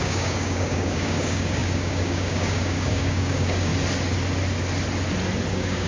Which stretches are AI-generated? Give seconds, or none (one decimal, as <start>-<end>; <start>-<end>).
0.0-3.7; 5.5-5.9